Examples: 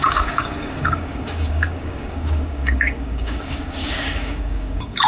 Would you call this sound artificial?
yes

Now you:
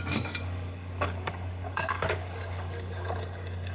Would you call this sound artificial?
yes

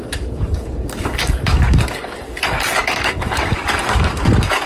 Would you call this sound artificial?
yes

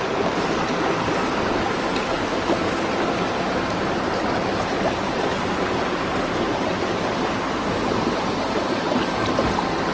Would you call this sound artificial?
no